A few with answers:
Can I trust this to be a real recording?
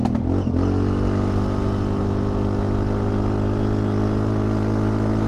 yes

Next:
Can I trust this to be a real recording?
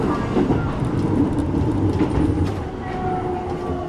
yes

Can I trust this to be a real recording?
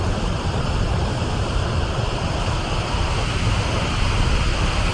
yes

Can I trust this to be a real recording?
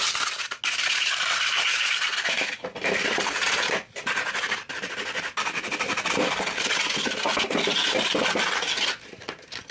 yes